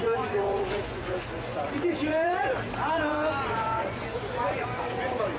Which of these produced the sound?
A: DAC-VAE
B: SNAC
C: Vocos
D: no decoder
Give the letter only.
C